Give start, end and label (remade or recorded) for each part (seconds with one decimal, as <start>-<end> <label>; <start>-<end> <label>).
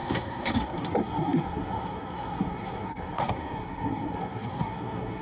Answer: 0.0-5.2 remade